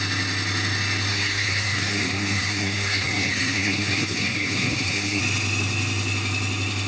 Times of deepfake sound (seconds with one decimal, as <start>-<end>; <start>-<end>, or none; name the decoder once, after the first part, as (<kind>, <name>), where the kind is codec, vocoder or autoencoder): 1.1-5.2 (codec, SNAC)